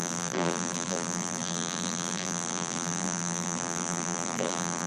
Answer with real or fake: fake